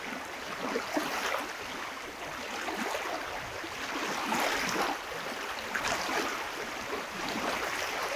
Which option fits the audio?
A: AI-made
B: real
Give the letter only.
B